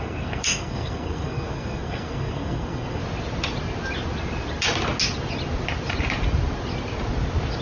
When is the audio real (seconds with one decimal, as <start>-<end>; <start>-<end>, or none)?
3.0-7.6